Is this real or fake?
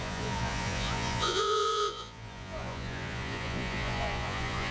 fake